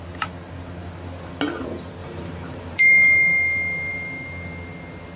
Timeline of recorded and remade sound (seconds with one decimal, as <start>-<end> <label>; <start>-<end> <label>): 0.0-2.0 recorded; 2.0-2.9 remade; 2.9-5.2 recorded